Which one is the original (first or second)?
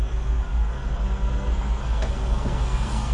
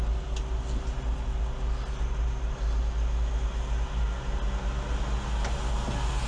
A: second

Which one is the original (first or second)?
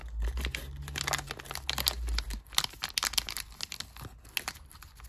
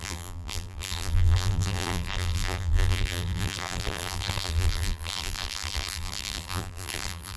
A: first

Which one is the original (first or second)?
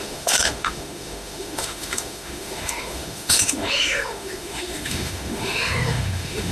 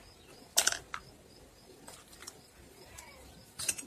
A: second